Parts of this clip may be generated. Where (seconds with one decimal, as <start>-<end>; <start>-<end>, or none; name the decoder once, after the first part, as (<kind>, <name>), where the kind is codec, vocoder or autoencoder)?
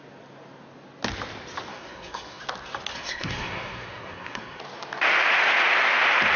1.7-2.4 (codec, SNAC); 2.9-4.6